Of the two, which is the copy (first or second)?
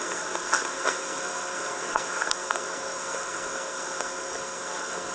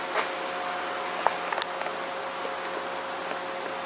first